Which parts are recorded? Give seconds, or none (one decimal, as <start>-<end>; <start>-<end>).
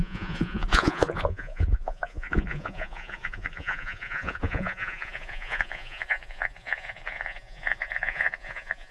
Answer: none